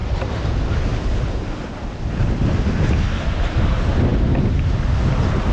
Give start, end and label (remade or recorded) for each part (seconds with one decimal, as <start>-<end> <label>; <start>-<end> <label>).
0.0-5.5 recorded